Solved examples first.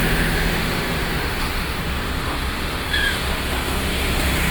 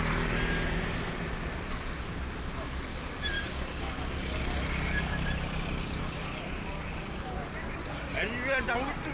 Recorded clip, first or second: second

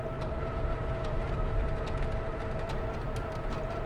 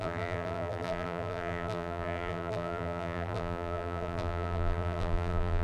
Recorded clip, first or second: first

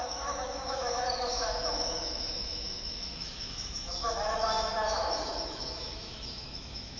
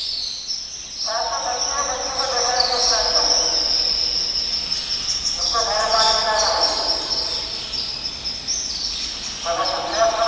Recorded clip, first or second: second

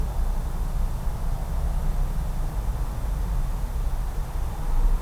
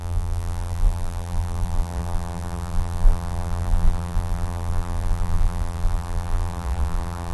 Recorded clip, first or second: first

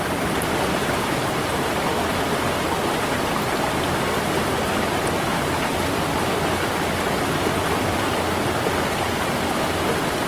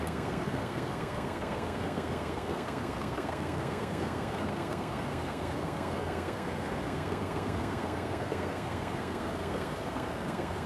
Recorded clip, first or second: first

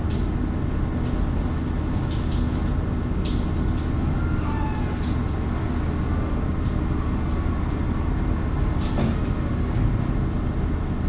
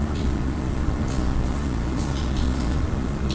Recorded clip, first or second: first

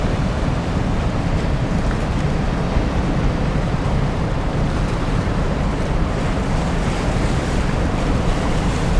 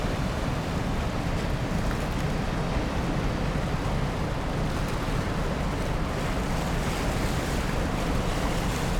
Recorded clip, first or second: second